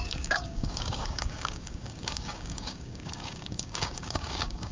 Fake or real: fake